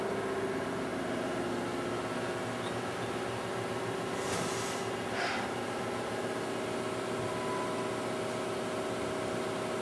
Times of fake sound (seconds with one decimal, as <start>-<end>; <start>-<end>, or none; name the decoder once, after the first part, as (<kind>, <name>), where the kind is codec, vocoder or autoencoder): none